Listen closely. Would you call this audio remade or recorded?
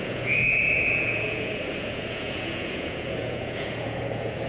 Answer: remade